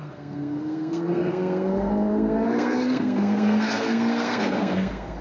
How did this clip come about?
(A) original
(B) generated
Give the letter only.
B